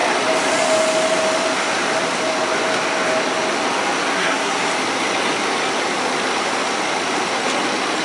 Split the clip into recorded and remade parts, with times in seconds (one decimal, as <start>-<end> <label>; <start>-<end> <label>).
0.0-4.1 recorded; 4.1-4.7 remade; 4.7-8.0 recorded